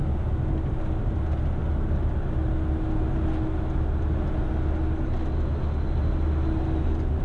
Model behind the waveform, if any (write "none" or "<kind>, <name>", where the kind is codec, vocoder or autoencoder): none